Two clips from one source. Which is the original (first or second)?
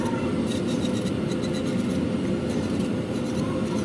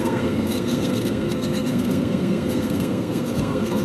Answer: first